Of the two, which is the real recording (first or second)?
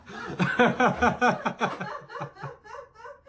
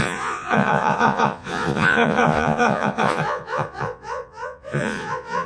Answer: first